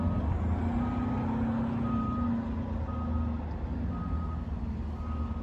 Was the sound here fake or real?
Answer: real